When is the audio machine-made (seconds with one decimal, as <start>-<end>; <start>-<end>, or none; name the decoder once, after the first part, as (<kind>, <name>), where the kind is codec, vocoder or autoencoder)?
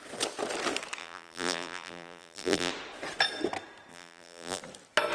1.0-2.7 (vocoder, BigVGAN v2); 3.9-4.6